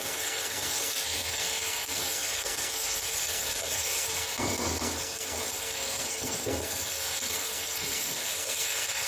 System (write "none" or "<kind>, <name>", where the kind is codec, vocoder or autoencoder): codec, SNAC